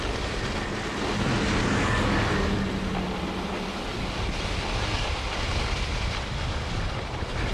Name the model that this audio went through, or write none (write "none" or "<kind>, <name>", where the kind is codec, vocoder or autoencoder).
none